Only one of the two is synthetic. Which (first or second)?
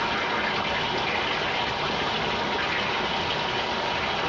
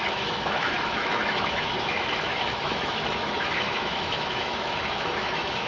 second